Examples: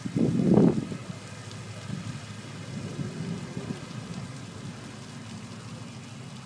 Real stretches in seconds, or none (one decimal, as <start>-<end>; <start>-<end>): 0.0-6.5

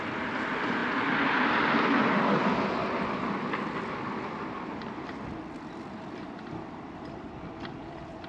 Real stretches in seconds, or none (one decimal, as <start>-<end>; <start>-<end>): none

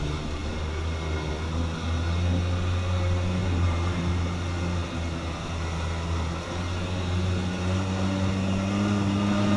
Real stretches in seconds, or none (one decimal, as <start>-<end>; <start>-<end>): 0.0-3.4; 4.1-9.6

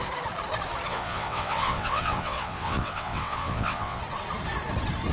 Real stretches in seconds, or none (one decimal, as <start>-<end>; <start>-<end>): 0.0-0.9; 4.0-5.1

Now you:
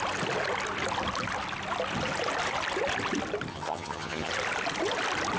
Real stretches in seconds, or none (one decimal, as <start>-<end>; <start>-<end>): 0.0-3.5; 4.3-5.4

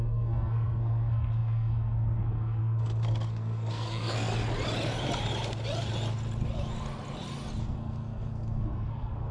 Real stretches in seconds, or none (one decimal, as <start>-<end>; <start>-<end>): 4.3-7.6

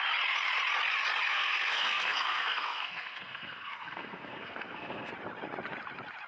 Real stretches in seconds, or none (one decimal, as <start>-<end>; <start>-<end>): 0.0-1.3; 5.1-6.3

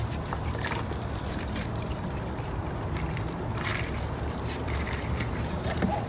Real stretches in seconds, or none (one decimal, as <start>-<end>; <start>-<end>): none